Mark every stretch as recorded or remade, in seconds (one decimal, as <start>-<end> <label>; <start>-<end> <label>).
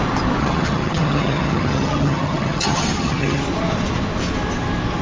0.0-0.4 recorded; 0.4-3.4 remade; 3.4-5.0 recorded